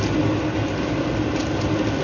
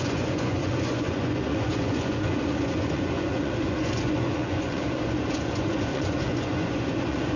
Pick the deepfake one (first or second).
second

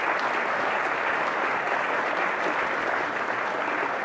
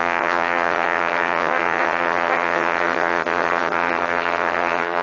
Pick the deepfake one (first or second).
second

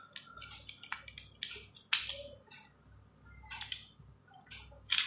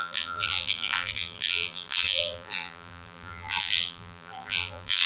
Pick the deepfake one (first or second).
second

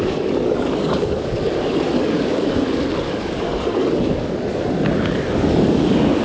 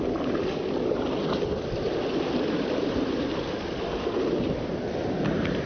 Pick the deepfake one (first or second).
first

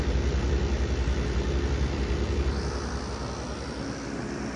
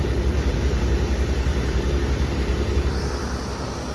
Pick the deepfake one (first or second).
second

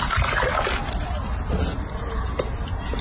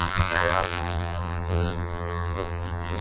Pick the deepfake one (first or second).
second